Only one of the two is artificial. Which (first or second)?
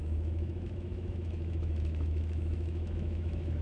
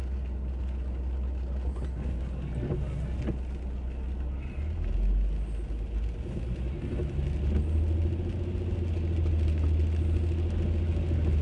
first